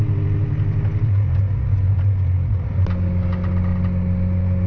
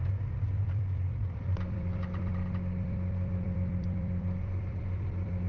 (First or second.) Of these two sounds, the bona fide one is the first